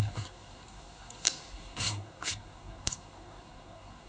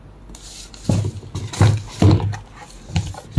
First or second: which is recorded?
second